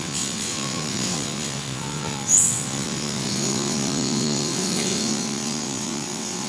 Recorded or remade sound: remade